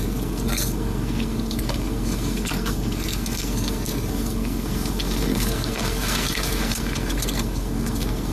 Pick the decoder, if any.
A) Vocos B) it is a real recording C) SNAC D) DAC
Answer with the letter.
C